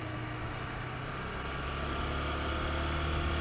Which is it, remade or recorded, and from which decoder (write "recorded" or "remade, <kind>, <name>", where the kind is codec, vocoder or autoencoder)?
recorded